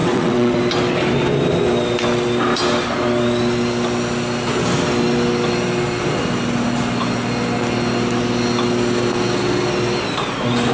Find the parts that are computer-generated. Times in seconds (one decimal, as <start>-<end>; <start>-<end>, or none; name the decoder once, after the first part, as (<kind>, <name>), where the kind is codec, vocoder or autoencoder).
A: 0.0-0.6 (vocoder, WaveNeXt)